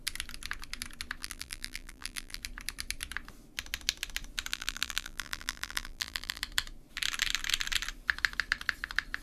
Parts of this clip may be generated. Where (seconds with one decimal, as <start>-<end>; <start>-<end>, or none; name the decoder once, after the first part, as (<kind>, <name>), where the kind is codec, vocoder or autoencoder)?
1.2-2.4 (vocoder, BigVGAN v2); 4.5-6.4